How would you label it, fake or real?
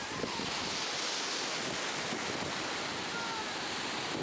real